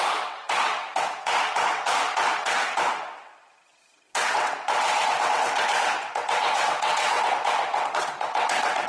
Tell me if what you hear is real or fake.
fake